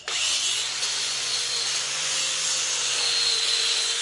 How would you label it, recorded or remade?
remade